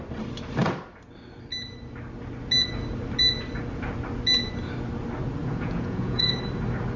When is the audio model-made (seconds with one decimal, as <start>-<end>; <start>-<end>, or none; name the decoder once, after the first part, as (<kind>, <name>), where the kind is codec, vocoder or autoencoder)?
5.4-6.4 (vocoder, Vocos)